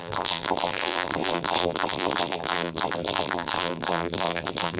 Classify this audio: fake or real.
fake